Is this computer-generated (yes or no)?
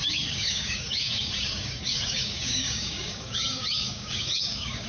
yes